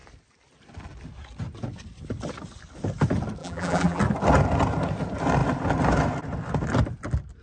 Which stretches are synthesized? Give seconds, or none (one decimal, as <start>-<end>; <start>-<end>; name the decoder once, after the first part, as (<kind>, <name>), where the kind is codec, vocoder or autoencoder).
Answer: 3.4-4.0 (vocoder, BigVGAN v2)